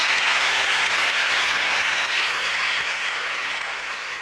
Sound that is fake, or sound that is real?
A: fake